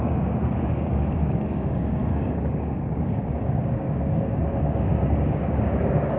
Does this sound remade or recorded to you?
remade